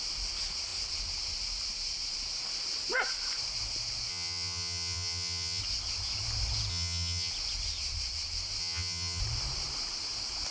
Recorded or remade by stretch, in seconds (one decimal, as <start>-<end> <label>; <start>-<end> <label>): 0.0-4.1 recorded; 4.1-5.6 remade; 5.6-6.7 recorded; 6.7-7.3 remade; 7.3-8.6 recorded; 8.6-9.2 remade; 9.2-10.5 recorded